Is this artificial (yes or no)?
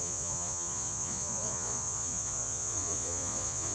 yes